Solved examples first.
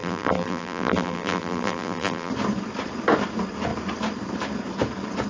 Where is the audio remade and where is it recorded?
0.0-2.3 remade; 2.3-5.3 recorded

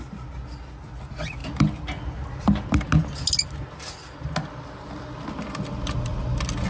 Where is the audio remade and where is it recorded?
0.0-6.7 recorded

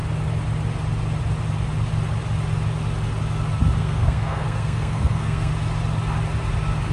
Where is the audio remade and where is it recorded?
0.0-3.8 recorded; 3.8-5.5 remade; 5.5-6.9 recorded

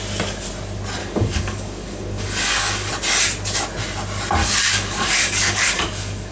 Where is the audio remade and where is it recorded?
0.0-1.0 recorded; 1.0-2.9 remade; 2.9-4.4 recorded; 4.4-6.3 remade

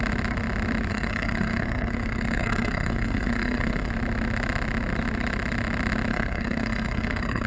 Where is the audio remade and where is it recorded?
0.0-0.9 recorded; 0.9-3.9 remade; 3.9-6.1 recorded; 6.1-7.5 remade

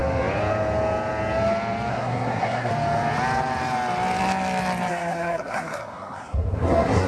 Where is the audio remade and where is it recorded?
0.0-1.9 recorded; 1.9-2.7 remade; 2.7-4.9 recorded; 4.9-7.1 remade